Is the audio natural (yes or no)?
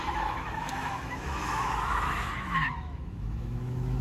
no